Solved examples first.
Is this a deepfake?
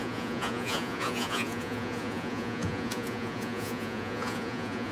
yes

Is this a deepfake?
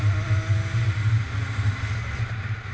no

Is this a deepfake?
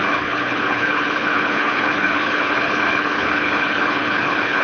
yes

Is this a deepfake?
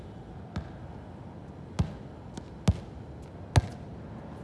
no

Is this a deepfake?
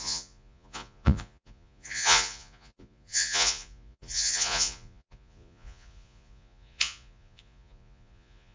yes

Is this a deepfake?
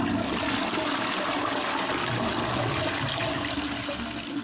no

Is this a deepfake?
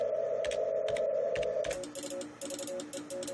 no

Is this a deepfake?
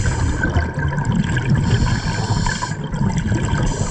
no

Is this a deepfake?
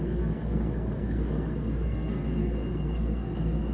yes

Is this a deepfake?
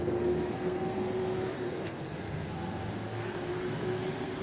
yes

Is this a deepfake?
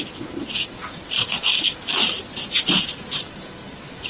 no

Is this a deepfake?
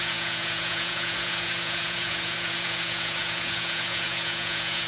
yes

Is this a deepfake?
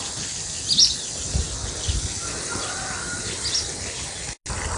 no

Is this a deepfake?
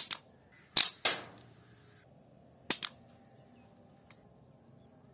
no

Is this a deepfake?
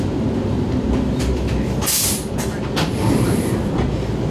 no